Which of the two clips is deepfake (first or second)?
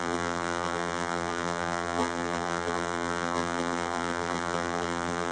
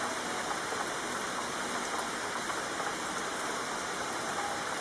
first